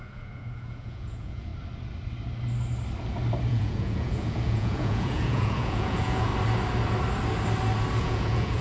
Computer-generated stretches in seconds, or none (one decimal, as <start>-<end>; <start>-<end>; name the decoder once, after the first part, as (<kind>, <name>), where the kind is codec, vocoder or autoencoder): 0.0-1.5 (vocoder, Vocos); 3.5-6.3; 8.0-8.6